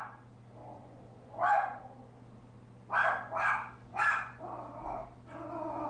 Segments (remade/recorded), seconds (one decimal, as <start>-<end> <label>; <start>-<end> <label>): 0.0-0.6 recorded; 0.6-1.8 remade; 1.8-3.9 recorded; 3.9-4.4 remade; 4.4-5.9 recorded